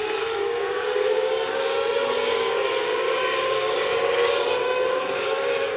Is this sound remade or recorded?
remade